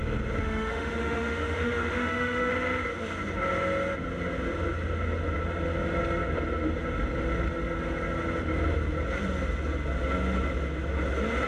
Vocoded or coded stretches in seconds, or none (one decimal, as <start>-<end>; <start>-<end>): 0.4-2.5